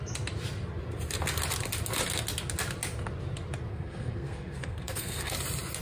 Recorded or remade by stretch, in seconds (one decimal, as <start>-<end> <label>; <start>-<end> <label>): 0.0-3.7 recorded; 3.7-5.3 remade; 5.3-5.8 recorded